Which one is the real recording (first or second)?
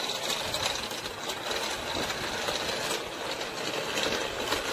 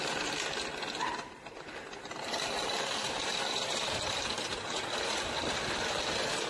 first